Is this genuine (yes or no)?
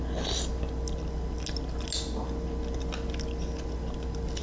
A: yes